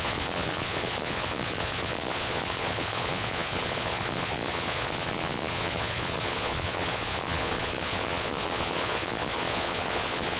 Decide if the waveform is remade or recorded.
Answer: remade